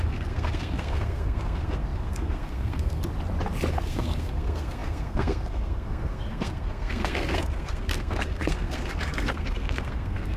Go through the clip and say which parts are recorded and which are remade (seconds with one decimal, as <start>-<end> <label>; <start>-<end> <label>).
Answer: 0.0-3.0 remade; 3.0-3.7 recorded; 3.7-10.4 remade